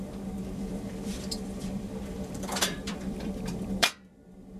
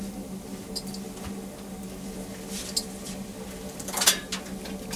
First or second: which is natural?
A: second